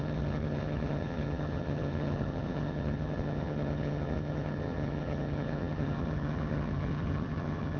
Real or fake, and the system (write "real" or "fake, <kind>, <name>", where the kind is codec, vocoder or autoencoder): fake, vocoder, HiFi-GAN